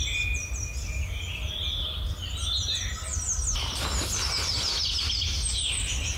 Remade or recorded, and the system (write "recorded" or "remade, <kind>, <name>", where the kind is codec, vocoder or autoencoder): recorded